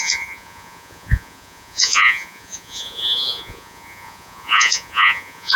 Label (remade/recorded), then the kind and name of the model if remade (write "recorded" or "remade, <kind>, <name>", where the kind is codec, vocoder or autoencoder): remade, vocoder, Vocos